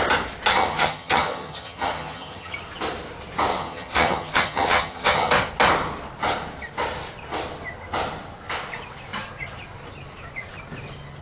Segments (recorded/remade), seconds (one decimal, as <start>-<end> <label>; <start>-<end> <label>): 0.0-0.5 recorded; 0.5-2.5 remade; 2.5-3.5 recorded; 3.5-5.3 remade; 5.3-11.2 recorded